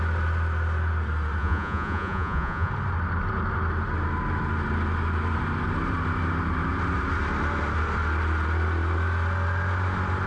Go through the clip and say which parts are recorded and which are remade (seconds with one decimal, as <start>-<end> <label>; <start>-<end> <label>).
0.0-1.4 recorded; 1.4-2.7 remade; 2.7-10.3 recorded